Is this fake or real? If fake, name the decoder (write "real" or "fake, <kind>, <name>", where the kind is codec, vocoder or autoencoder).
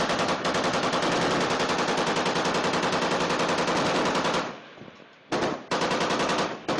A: real